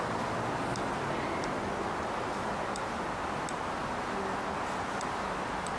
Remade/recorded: recorded